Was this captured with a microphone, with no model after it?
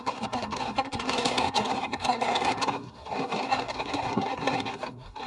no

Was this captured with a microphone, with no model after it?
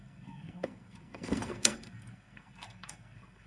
no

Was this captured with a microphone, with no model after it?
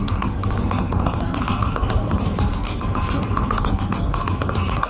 no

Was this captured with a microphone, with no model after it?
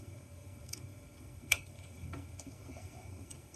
no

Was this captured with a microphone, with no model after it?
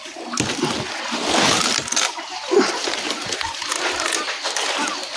yes